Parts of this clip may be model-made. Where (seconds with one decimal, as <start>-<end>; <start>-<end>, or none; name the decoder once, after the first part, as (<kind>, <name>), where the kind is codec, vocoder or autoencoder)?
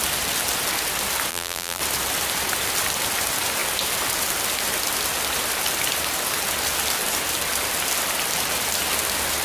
1.3-1.8 (vocoder, BigVGAN v2)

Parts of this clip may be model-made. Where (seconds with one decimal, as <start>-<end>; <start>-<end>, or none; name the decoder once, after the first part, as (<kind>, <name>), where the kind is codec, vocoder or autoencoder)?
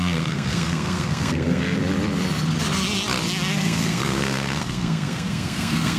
0.0-1.8 (codec, SNAC); 3.5-6.0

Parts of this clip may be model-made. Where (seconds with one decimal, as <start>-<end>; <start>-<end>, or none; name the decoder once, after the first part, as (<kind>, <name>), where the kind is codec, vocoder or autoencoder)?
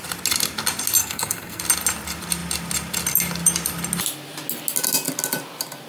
1.0-1.6 (codec, SNAC)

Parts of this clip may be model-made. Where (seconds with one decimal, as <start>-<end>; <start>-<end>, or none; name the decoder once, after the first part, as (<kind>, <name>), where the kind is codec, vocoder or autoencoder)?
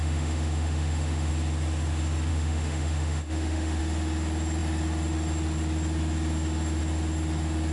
0.0-1.3 (autoencoder, DAC-VAE); 2.3-3.8